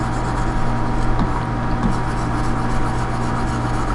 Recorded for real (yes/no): yes